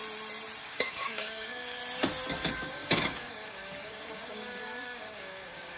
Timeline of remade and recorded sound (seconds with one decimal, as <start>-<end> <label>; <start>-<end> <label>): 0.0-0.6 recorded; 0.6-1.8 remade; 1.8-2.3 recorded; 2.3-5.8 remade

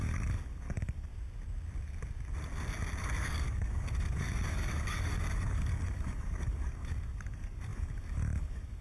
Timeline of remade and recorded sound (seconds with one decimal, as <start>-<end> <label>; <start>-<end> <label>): 0.0-1.1 remade; 1.1-3.0 recorded; 3.0-8.8 remade

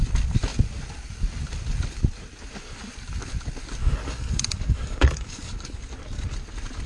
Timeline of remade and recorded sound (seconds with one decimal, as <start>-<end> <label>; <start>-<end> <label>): 0.0-3.8 recorded; 3.8-5.8 remade; 5.8-6.9 recorded